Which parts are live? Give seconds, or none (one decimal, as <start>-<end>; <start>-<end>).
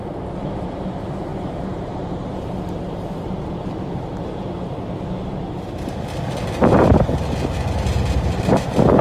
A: 0.0-1.3; 6.1-9.0